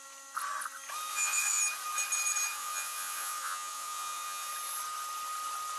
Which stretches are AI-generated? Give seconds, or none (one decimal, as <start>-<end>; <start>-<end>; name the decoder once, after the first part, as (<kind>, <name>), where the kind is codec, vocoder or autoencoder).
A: 1.1-1.6 (vocoder, Vocos); 2.5-4.5